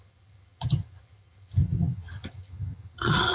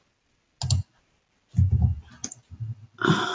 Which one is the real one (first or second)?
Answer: second